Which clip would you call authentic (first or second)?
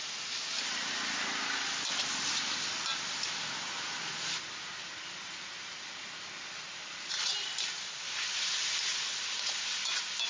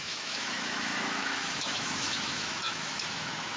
first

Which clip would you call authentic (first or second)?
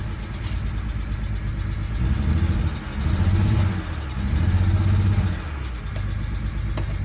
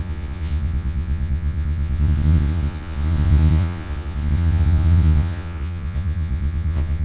first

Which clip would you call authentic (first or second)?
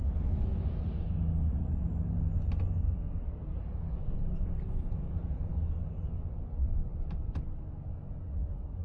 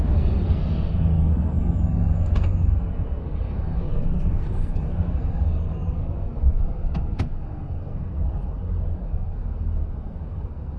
first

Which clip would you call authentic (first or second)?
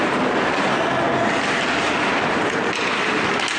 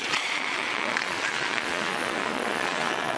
first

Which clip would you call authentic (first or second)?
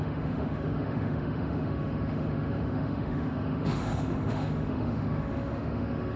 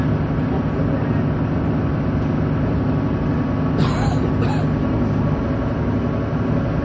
second